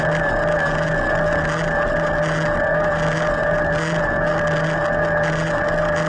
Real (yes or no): yes